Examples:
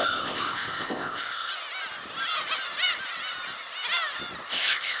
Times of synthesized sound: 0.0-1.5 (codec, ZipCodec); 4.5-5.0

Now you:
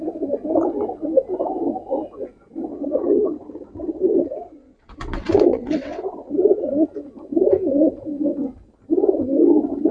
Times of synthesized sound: 2.7-6.7 (vocoder, WaveNeXt)

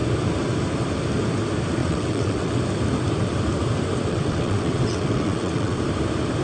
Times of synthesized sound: 1.8-2.6 (vocoder, WaveNeXt); 4.1-5.8

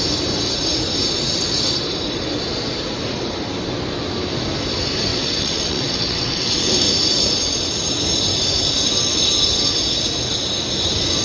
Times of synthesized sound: 5.1-6.7 (vocoder, WaveNeXt)